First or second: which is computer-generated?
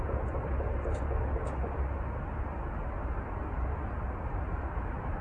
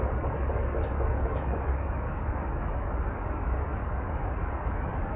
second